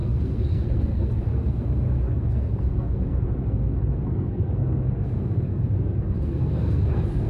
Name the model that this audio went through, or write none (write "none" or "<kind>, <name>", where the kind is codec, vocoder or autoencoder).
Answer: codec, SNAC